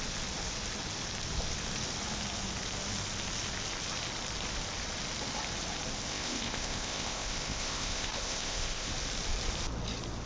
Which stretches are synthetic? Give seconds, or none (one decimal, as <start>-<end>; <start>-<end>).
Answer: 6.1-8.9